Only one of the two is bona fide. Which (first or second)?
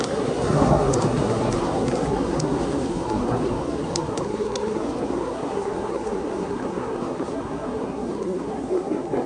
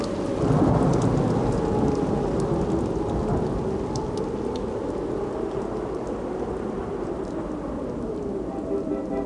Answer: second